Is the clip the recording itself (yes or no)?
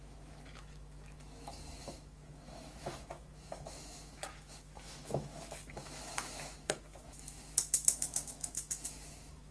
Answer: no